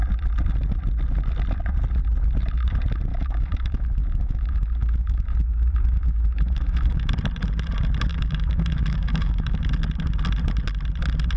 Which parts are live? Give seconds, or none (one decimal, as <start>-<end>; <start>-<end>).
0.0-3.1; 7.1-8.1; 9.6-11.4